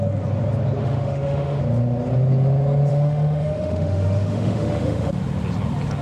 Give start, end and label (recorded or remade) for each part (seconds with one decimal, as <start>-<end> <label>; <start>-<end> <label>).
0.0-0.8 recorded; 0.8-1.6 remade; 1.6-2.9 recorded; 2.9-5.2 remade; 5.2-6.0 recorded